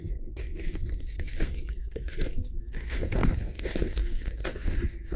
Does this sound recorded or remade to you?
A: remade